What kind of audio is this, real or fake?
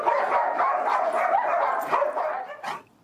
fake